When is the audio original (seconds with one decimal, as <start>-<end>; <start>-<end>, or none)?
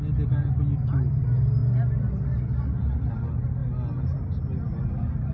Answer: 0.0-5.3